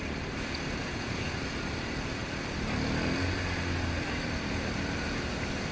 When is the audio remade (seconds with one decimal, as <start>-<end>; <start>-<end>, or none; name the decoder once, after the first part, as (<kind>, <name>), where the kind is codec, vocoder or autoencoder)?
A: 0.8-1.3 (vocoder, Vocos)